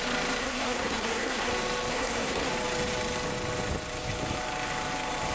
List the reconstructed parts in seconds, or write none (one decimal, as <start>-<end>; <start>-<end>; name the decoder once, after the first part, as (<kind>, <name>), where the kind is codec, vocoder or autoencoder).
0.4-1.5 (codec, SNAC); 1.9-2.5